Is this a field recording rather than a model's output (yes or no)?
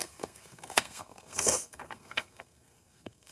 no